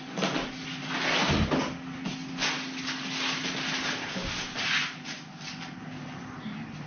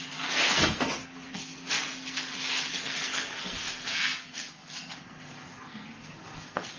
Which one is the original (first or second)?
first